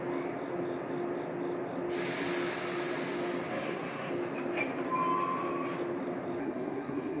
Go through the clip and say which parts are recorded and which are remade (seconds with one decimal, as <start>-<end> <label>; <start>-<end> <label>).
0.0-3.5 recorded; 3.5-4.1 remade; 4.1-6.4 recorded; 6.4-7.2 remade